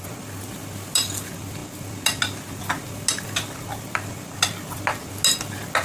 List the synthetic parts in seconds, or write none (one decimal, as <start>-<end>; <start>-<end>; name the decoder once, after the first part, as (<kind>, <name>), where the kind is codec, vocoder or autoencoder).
none